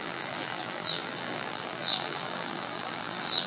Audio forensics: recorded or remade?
remade